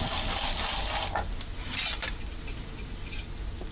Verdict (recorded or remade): recorded